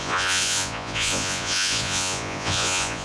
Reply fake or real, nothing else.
fake